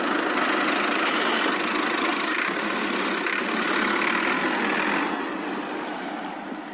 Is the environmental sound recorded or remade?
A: recorded